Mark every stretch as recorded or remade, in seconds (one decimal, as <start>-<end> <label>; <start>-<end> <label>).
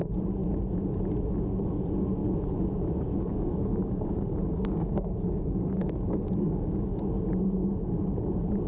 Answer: 0.0-3.3 recorded; 3.3-7.0 remade; 7.0-8.7 recorded